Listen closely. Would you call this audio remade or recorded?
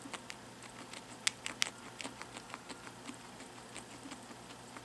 recorded